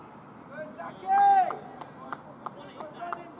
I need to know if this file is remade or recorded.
recorded